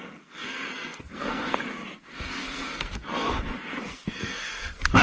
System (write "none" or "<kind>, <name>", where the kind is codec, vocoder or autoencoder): codec, SNAC